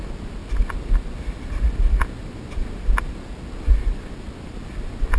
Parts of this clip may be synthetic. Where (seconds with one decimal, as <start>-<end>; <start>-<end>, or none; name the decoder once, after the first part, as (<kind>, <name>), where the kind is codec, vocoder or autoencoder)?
none